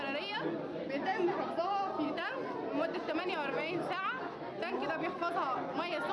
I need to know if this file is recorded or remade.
recorded